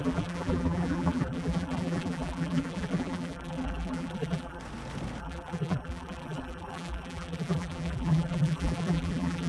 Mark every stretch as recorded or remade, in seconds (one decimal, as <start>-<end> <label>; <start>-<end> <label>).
0.0-4.6 remade; 4.6-5.2 recorded; 5.2-9.5 remade